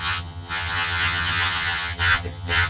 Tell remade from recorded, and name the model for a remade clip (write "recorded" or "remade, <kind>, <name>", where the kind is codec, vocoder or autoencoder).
remade, vocoder, HiFi-GAN